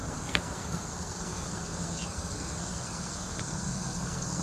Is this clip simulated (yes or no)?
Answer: yes